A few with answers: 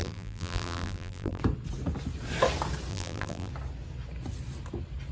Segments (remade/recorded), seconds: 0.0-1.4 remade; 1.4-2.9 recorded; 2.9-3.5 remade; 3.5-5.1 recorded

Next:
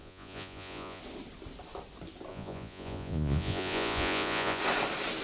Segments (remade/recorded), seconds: 0.0-1.0 remade; 1.0-2.3 recorded; 2.3-4.6 remade; 4.6-5.2 recorded

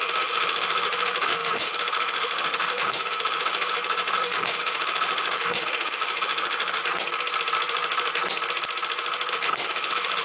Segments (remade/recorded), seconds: 0.0-6.8 remade; 6.8-9.3 recorded; 9.3-10.2 remade

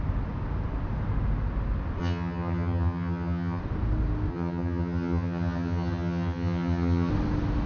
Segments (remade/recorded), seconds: 0.0-2.0 recorded; 2.0-3.6 remade; 3.6-4.3 recorded; 4.3-7.1 remade; 7.1-7.7 recorded

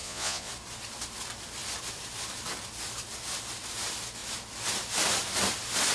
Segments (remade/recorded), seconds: 0.0-0.5 remade; 0.5-5.9 recorded

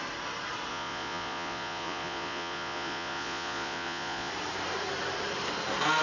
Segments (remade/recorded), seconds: 0.0-0.7 recorded; 0.7-4.3 remade; 4.3-6.0 recorded

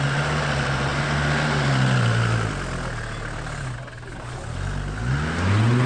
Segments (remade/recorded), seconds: 0.0-5.9 recorded